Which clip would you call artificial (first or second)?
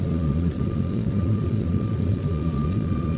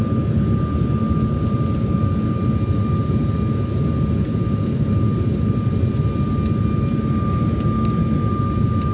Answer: first